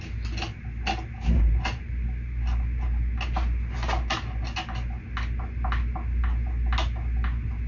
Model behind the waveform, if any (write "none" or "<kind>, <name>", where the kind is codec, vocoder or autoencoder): none